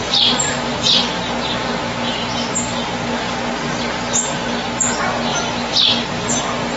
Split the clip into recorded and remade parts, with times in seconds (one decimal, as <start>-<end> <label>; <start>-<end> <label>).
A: 0.0-0.9 remade; 0.9-6.8 recorded